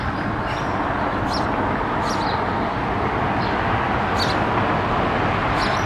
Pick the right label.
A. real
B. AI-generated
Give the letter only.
A